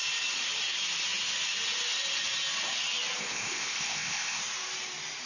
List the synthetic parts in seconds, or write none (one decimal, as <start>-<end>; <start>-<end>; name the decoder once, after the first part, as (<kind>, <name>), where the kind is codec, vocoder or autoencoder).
3.2-4.4 (codec, ZipCodec)